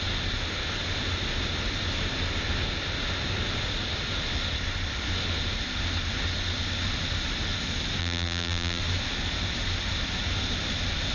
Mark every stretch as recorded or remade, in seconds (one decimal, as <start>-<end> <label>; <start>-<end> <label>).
0.0-8.0 recorded; 8.0-8.8 remade; 8.8-11.1 recorded